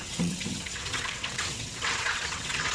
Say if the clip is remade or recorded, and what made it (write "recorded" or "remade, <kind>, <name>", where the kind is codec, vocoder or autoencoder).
remade, vocoder, WaveNeXt